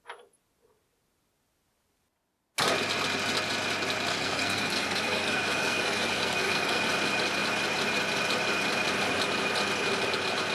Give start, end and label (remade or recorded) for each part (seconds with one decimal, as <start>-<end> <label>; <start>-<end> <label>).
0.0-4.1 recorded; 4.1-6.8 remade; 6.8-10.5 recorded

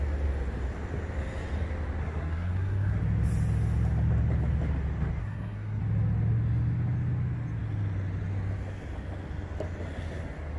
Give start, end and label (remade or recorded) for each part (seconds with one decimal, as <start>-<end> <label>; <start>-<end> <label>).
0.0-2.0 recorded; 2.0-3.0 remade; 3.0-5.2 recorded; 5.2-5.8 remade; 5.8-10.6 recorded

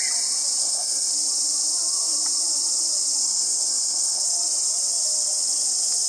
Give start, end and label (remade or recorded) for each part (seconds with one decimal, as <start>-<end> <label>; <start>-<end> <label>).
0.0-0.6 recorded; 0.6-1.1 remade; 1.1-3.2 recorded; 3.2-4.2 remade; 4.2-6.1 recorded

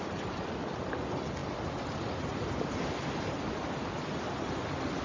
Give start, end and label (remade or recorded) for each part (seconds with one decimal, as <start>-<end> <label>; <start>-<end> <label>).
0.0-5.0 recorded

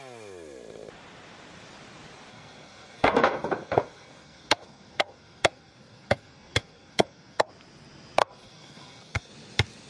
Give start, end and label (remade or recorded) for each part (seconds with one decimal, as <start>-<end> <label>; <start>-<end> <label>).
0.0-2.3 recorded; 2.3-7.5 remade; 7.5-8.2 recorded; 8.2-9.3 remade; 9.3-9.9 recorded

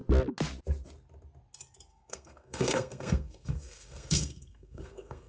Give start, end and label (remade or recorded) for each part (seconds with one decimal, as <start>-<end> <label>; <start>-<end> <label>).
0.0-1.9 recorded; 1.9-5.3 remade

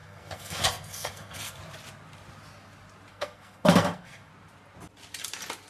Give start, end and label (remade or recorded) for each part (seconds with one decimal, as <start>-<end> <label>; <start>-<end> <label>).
0.0-1.6 remade; 1.6-3.1 recorded; 3.1-4.3 remade; 4.3-5.7 recorded